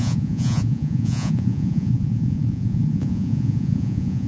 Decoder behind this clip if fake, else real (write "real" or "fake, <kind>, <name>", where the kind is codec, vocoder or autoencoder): fake, vocoder, Vocos